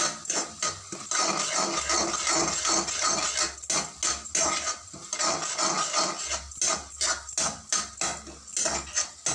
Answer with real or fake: real